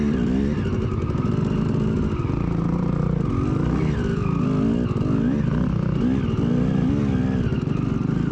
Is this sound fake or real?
real